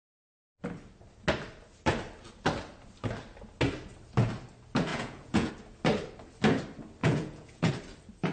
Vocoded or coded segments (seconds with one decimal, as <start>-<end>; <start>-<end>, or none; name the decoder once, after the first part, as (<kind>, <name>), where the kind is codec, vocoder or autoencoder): 4.9-5.5 (vocoder, Vocos); 7.0-7.7